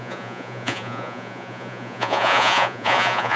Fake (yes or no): yes